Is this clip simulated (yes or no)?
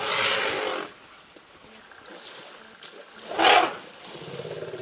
no